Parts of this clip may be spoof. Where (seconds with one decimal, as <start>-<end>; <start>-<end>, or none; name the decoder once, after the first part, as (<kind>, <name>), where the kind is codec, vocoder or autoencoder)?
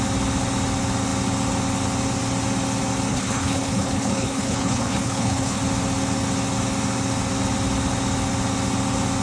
3.1-5.6 (codec, HILCodec)